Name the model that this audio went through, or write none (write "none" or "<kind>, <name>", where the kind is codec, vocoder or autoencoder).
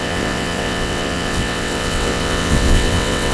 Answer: vocoder, WaveNeXt